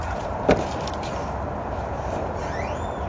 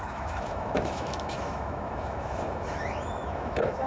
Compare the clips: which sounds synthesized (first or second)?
second